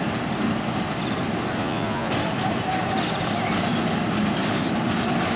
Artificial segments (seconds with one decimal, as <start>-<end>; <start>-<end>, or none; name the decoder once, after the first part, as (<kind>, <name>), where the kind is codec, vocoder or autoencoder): 1.6-2.1 (vocoder, Vocos)